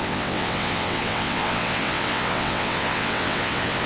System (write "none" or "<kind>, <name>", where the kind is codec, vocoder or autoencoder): vocoder, WaveNeXt